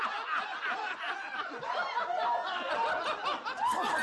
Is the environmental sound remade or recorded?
recorded